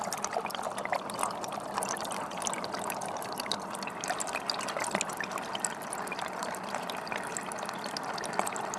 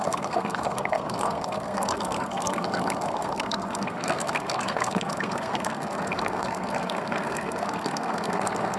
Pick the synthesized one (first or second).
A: second